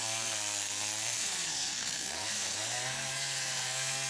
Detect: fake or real fake